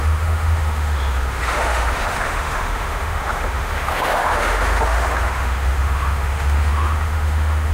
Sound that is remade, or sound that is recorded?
remade